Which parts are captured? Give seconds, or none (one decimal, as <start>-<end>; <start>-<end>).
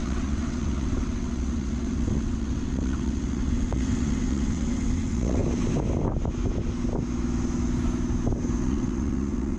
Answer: 5.4-8.6